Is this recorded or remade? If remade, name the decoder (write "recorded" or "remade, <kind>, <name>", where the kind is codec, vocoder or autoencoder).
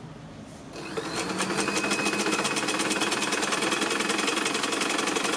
recorded